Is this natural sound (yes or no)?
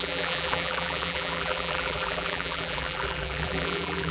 no